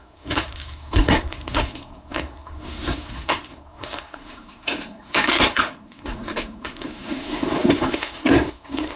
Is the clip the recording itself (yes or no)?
no